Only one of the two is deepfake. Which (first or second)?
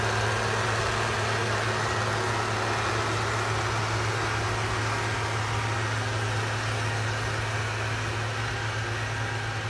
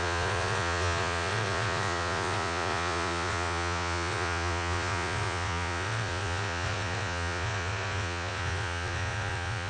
second